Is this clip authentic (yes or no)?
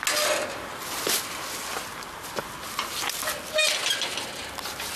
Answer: yes